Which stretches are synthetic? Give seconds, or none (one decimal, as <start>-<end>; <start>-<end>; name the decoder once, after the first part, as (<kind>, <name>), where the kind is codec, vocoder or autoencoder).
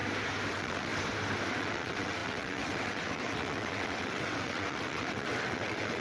0.5-0.9 (vocoder, WaveNeXt); 1.5-6.0